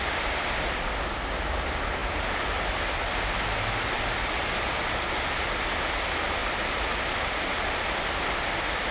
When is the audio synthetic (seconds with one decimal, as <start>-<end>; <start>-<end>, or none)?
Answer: none